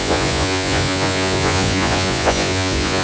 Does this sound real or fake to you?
fake